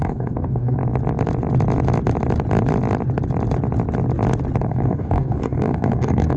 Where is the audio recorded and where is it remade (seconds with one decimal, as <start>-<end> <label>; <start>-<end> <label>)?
0.0-0.8 remade; 0.8-4.6 recorded; 4.6-6.4 remade